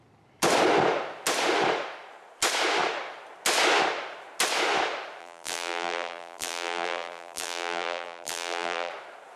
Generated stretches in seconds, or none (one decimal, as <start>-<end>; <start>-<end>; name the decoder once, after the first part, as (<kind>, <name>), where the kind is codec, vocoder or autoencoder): 5.2-8.9 (vocoder, BigVGAN v2)